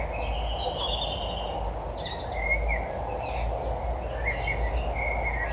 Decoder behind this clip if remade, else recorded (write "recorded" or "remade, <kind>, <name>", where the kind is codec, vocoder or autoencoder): recorded